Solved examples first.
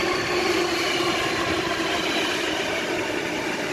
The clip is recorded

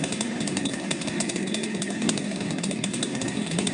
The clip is remade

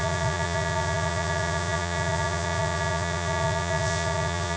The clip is remade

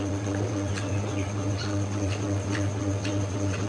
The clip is remade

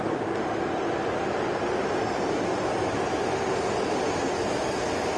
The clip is recorded